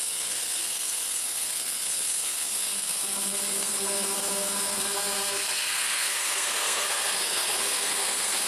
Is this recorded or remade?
remade